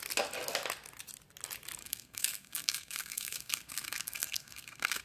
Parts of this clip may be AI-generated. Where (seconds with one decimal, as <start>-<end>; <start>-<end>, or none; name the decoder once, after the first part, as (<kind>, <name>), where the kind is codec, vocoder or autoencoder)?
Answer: 1.8-5.0 (codec, SNAC)